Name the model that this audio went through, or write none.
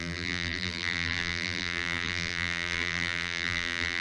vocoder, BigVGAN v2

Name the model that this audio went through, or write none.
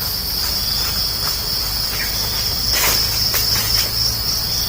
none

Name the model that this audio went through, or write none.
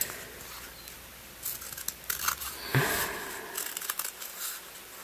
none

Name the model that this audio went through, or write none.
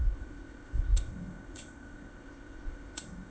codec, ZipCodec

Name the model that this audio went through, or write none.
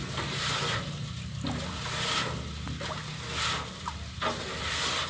none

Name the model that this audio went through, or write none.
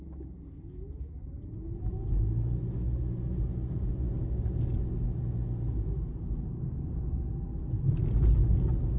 none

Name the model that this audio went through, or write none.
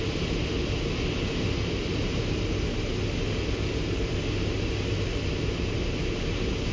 none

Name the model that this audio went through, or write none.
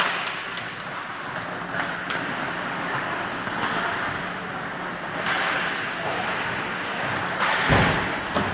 none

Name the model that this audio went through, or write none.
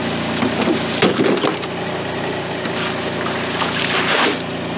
none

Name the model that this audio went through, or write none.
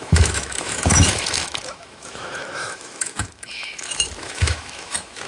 autoencoder, DAC-VAE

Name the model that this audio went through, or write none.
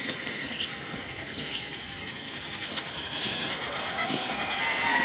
codec, SNAC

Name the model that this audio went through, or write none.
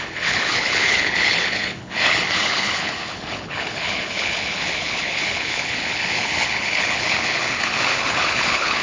codec, HILCodec